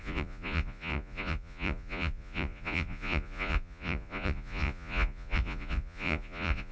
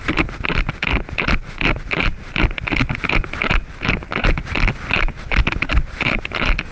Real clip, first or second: second